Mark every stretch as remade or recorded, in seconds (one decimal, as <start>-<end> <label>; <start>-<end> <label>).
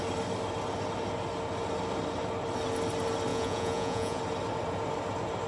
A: 0.0-3.3 recorded; 3.3-4.2 remade; 4.2-5.5 recorded